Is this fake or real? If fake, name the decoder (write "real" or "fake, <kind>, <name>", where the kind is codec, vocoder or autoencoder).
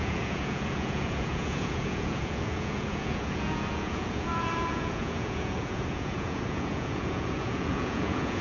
fake, vocoder, Vocos